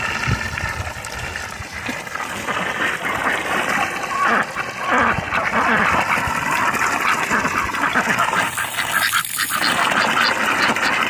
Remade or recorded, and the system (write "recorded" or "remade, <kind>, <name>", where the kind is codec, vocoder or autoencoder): recorded